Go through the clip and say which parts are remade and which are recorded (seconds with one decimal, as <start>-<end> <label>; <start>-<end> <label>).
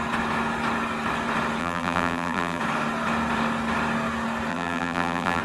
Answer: 0.0-1.6 recorded; 1.6-2.6 remade; 2.6-4.5 recorded; 4.5-5.4 remade